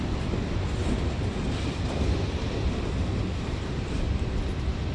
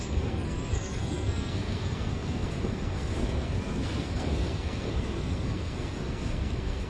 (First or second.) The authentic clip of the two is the first